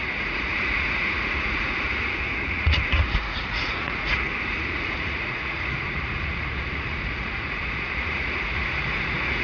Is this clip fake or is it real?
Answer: fake